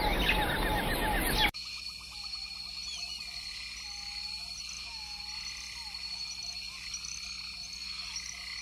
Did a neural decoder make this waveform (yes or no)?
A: no